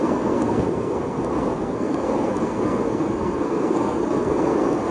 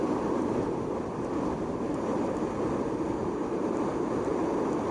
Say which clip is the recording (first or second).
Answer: second